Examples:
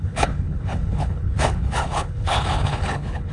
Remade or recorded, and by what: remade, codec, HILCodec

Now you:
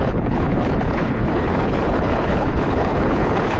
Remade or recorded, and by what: remade, codec, HILCodec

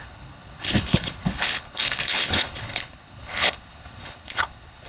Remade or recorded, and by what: remade, codec, HILCodec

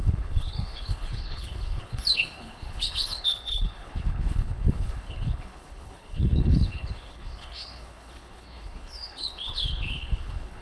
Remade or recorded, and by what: remade, codec, HILCodec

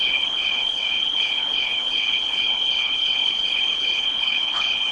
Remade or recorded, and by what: remade, codec, HILCodec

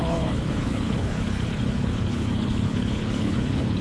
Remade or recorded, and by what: remade, codec, HILCodec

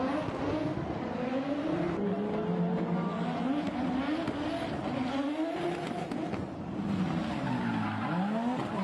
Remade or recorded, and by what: recorded